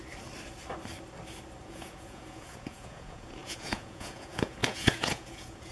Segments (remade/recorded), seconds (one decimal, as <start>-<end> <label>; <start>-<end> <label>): 0.0-1.6 recorded; 1.6-5.7 remade